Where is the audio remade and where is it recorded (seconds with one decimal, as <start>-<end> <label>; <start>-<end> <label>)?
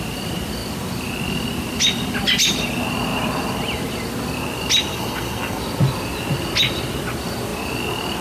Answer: 0.0-4.9 recorded; 4.9-5.6 remade; 5.6-8.2 recorded